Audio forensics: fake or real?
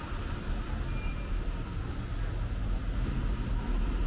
real